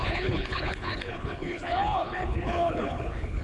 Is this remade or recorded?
remade